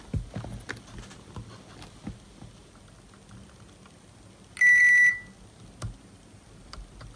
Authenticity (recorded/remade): recorded